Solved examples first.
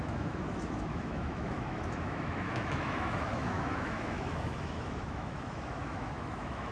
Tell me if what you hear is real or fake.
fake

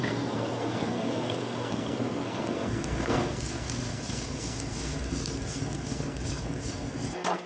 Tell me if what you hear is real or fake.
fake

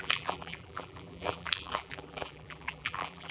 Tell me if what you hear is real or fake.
fake